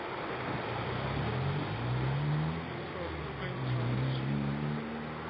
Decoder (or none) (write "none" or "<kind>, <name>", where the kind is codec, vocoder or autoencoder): none